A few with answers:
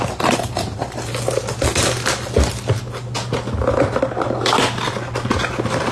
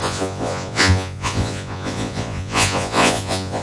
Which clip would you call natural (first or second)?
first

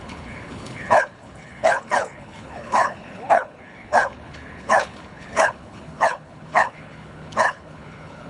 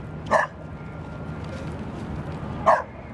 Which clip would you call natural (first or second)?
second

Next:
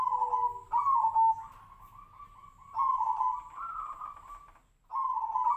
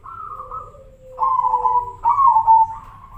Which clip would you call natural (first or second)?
first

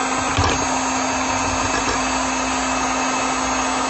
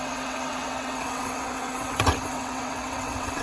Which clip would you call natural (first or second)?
first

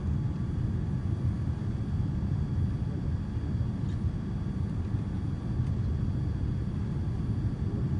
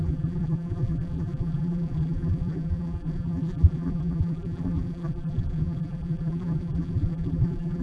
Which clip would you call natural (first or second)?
first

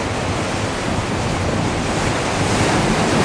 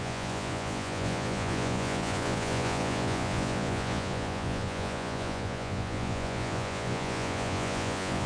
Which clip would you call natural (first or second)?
first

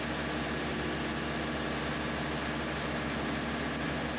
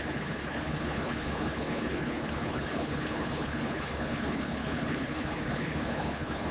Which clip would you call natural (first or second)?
first